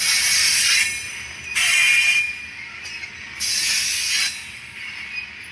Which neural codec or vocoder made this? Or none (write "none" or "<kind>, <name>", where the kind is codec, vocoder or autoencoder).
none